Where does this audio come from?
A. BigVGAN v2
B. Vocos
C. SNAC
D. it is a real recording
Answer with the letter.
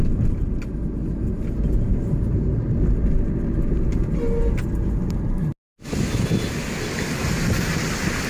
D